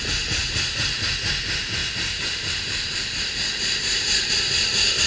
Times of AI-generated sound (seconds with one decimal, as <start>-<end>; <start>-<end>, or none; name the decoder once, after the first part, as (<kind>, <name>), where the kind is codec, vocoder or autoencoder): 0.4-1.1 (vocoder, BigVGAN v2); 1.8-4.3

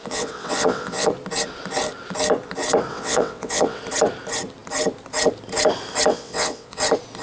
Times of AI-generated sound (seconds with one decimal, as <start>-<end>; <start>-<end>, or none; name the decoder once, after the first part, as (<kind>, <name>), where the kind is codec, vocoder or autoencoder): 0.0-1.1 (vocoder, WaveNeXt); 2.9-3.8; 6.1-6.8

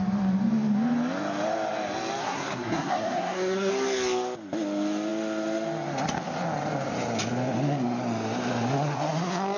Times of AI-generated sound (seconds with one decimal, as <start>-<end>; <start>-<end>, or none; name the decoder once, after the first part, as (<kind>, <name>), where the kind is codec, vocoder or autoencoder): 2.2-3.7 (codec, SNAC)

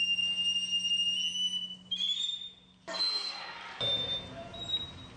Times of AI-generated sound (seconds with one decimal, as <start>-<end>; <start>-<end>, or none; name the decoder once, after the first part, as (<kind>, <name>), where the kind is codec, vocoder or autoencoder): none

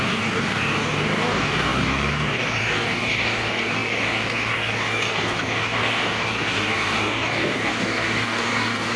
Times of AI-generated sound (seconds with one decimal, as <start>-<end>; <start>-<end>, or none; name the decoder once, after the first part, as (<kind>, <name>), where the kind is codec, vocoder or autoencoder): 0.0-9.0 (codec, DAC)

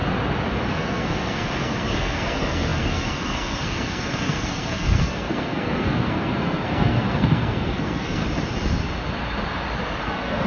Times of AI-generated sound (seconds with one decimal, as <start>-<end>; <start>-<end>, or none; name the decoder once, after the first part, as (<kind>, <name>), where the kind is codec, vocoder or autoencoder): 0.7-8.2 (codec, SNAC); 10.0-10.5